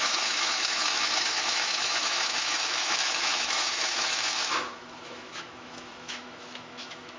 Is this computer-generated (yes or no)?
yes